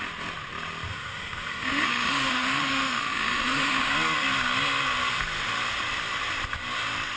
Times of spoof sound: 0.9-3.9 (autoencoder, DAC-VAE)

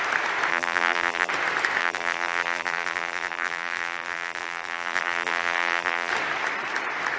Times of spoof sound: 0.5-1.3 (vocoder, BigVGAN v2); 1.8-6.1

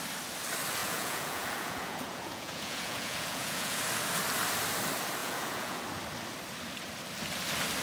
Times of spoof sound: 0.8-3.8 (vocoder, Vocos); 5.2-5.8

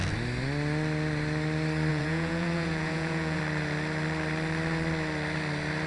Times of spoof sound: 1.9-3.4 (vocoder, Vocos)

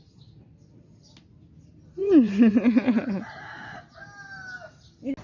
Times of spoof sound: 2.0-3.8 (vocoder, Vocos)

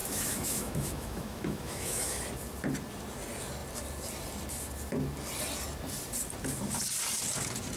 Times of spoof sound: 0.0-2.2 (autoencoder, DAC-VAE)